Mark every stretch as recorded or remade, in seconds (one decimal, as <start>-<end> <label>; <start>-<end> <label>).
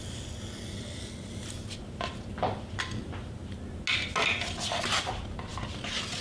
0.0-6.2 recorded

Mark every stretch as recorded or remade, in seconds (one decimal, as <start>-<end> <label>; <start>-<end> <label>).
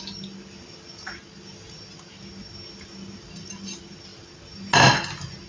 0.0-5.5 recorded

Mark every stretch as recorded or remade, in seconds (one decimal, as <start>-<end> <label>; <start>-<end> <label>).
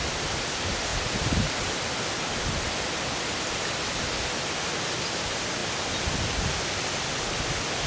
0.0-0.9 recorded; 0.9-2.9 remade; 2.9-7.9 recorded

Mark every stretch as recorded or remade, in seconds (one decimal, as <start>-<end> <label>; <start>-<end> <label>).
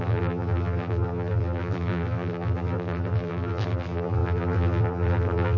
0.0-5.6 remade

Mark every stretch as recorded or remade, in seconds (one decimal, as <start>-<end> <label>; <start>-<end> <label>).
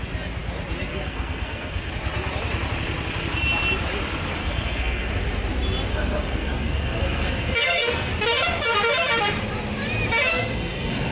0.0-0.9 recorded; 0.9-1.9 remade; 1.9-4.4 recorded; 4.4-5.1 remade; 5.1-5.9 recorded; 5.9-8.1 remade; 8.1-10.3 recorded; 10.3-11.1 remade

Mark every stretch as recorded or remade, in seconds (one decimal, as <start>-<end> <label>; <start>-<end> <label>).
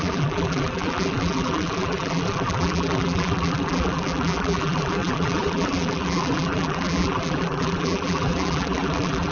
0.0-9.3 remade